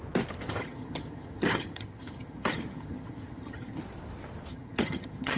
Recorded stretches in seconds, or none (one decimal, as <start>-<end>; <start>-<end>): 0.0-0.6; 3.8-4.5